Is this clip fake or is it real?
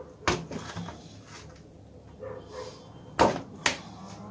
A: real